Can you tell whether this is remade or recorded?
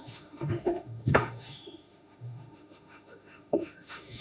remade